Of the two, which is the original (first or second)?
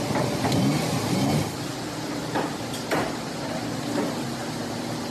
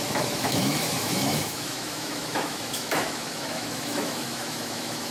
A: first